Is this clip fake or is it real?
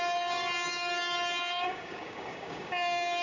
fake